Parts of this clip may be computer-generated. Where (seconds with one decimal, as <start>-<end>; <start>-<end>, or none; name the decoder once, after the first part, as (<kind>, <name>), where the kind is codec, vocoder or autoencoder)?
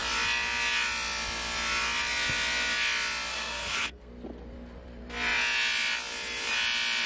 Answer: 3.3-4.1 (codec, SNAC)